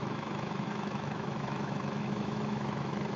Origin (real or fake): fake